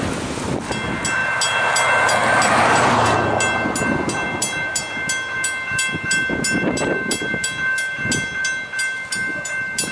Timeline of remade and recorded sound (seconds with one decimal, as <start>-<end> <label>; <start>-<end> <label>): 0.0-9.9 recorded